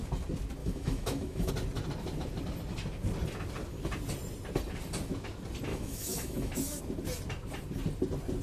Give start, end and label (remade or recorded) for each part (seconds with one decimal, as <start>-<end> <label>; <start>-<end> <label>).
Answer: 0.0-0.6 recorded; 0.6-1.5 remade; 1.5-5.7 recorded; 5.7-6.8 remade; 6.8-8.4 recorded